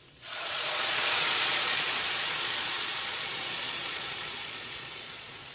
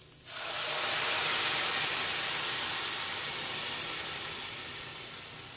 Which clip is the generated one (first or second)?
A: first